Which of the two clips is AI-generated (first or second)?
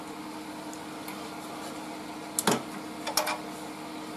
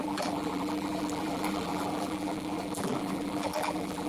second